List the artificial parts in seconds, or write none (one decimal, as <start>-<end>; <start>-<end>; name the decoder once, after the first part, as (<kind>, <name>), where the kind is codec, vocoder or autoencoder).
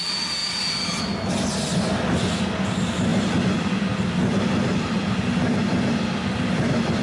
none